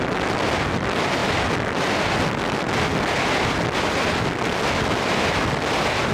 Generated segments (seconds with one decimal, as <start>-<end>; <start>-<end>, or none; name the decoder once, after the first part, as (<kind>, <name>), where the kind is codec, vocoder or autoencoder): none